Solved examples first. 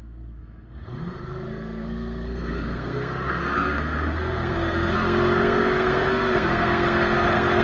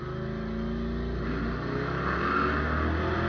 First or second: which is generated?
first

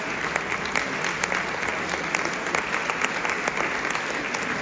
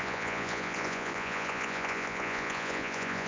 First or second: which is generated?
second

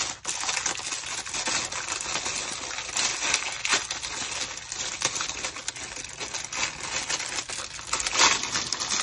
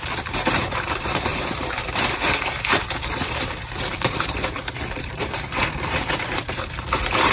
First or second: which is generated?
second